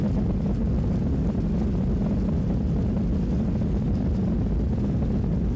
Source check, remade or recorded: recorded